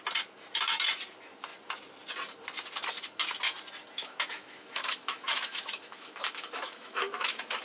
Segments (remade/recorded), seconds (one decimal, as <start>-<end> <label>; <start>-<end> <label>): 0.0-4.0 recorded; 4.0-7.6 remade